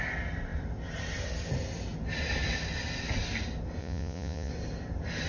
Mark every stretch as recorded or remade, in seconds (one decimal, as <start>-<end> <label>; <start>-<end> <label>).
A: 0.0-3.8 recorded; 3.8-4.5 remade; 4.5-5.3 recorded